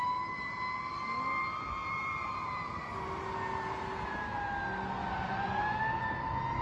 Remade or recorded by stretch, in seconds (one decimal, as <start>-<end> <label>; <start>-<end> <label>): 0.0-1.8 recorded; 1.8-2.8 remade; 2.8-5.0 recorded; 5.0-5.8 remade; 5.8-6.6 recorded